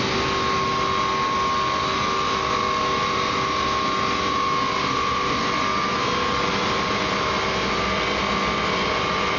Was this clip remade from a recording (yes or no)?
no